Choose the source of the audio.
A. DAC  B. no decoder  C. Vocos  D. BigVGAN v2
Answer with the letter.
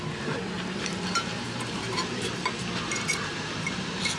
D